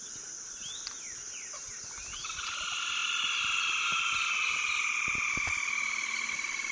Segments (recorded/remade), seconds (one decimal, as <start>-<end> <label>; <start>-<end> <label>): 0.0-6.7 recorded